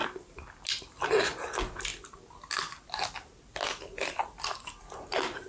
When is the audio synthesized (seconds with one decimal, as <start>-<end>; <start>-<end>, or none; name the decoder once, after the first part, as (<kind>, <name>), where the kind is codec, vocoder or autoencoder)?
none